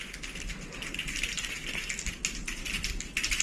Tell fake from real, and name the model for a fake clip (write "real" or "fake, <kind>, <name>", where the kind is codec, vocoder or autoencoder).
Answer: real